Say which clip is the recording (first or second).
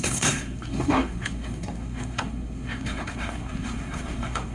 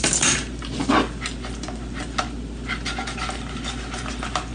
second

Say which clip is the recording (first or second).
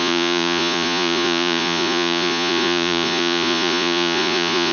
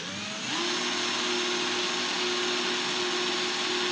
second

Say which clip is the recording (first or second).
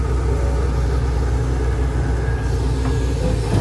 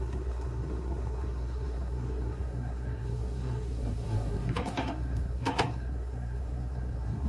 first